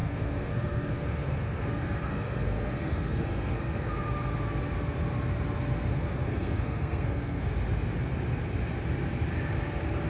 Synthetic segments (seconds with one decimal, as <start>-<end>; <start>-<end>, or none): 0.0-3.9; 5.9-7.5